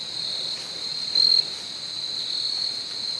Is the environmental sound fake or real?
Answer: real